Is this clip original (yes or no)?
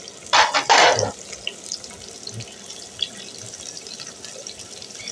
yes